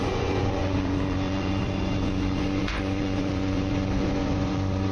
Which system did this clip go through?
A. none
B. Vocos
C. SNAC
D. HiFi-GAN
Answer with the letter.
B